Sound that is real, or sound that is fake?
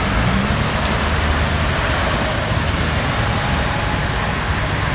real